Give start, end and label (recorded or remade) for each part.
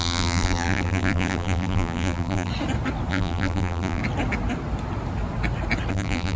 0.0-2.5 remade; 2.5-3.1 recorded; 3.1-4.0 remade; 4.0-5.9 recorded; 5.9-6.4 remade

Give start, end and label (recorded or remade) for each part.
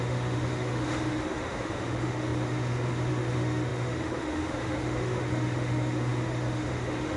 0.0-7.2 remade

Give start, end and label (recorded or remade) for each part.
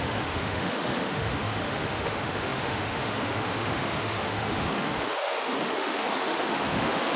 0.0-7.2 remade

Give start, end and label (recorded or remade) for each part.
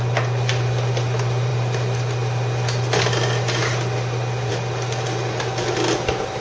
0.0-6.4 recorded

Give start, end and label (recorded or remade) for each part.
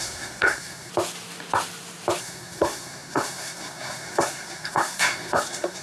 0.0-0.9 remade; 0.9-2.2 recorded; 2.2-5.8 remade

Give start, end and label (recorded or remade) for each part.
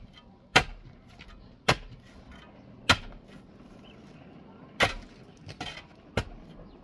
0.0-6.8 recorded